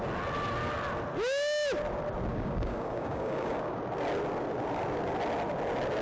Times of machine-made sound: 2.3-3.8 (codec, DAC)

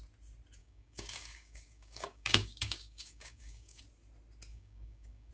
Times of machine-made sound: 0.6-3.8 (codec, DAC); 4.5-5.3

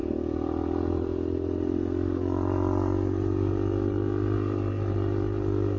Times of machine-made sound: none

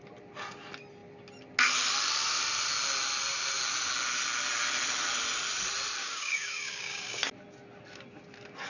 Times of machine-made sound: 6.0-7.2 (codec, DAC)

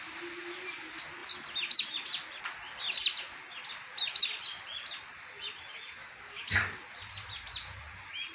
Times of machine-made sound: 6.0-6.6 (codec, DAC)

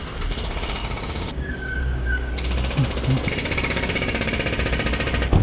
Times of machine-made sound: 0.8-2.3 (codec, DAC); 3.4-4.3

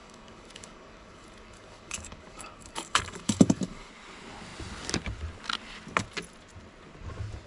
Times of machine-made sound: 0.0-3.9 (codec, DAC)

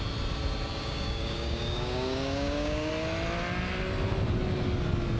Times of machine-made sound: 0.7-2.9 (codec, DAC)